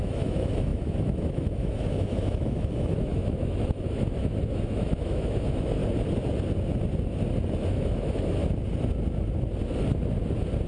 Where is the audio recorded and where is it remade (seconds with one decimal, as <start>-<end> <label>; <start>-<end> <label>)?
0.0-5.8 remade; 5.8-7.7 recorded; 7.7-8.4 remade; 8.4-10.7 recorded

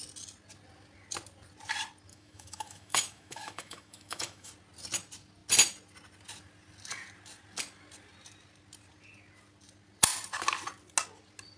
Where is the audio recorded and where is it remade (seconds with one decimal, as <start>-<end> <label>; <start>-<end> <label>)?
0.0-2.1 recorded; 2.1-4.5 remade; 4.5-11.6 recorded

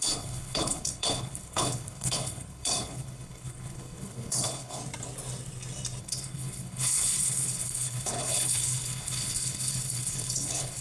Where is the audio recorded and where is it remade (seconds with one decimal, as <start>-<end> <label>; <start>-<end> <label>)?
0.0-4.8 remade; 4.8-6.0 recorded; 6.0-10.8 remade